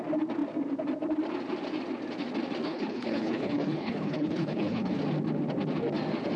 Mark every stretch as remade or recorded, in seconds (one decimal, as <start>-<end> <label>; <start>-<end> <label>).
0.0-2.6 recorded; 2.6-5.0 remade; 5.0-6.4 recorded